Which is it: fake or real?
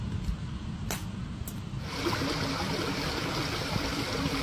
real